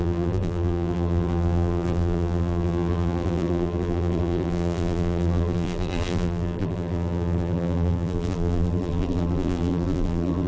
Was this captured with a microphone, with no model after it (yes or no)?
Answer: no